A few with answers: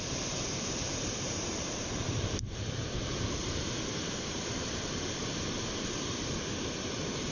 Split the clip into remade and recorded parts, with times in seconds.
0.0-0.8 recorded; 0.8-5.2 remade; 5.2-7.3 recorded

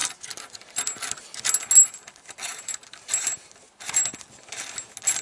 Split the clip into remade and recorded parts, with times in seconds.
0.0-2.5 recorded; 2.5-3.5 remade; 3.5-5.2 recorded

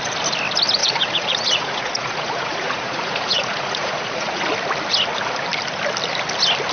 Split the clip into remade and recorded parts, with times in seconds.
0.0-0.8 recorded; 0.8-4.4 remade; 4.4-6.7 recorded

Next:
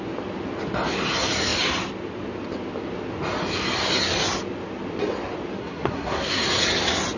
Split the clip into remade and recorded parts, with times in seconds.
0.0-5.6 recorded; 5.6-6.4 remade; 6.4-7.2 recorded